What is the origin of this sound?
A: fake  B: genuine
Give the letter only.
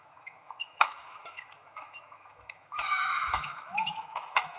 A